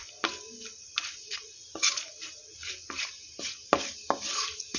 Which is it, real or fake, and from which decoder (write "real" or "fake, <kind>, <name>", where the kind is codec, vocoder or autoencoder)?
real